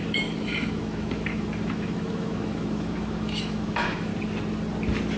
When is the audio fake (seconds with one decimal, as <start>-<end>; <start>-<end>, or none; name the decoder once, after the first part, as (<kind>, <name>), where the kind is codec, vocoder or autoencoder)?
0.0-4.1 (autoencoder, DAC-VAE)